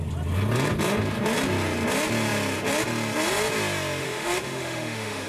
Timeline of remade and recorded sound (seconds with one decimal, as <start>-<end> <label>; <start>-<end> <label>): 0.0-4.0 recorded; 4.0-5.3 remade